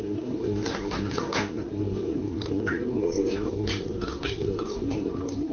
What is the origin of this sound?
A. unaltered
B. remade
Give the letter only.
B